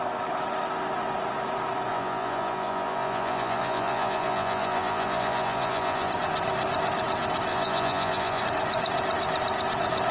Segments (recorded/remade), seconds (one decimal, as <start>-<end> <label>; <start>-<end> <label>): 0.0-1.9 recorded; 1.9-6.1 remade; 6.1-7.5 recorded; 7.5-8.4 remade; 8.4-10.1 recorded